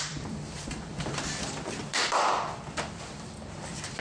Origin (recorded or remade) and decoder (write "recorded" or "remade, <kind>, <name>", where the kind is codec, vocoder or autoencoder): remade, vocoder, BigVGAN v2